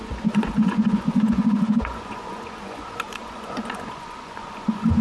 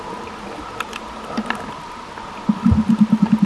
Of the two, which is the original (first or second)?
second